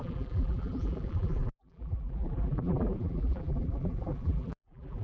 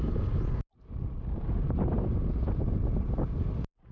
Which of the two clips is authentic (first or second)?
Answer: second